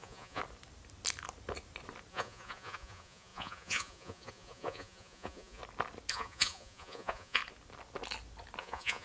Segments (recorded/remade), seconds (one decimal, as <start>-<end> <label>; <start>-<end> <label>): 0.0-0.4 remade; 0.4-2.1 recorded; 2.1-5.6 remade; 5.6-6.1 recorded; 6.1-7.4 remade; 7.4-8.6 recorded; 8.6-9.0 remade